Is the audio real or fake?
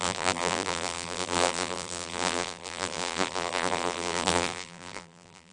fake